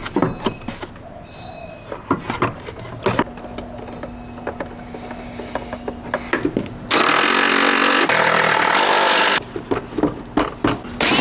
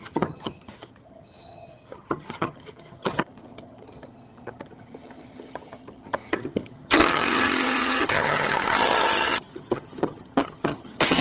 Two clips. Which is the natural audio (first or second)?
first